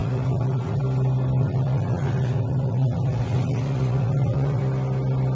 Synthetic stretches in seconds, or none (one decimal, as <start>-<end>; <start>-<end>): 0.0-0.8; 1.4-4.6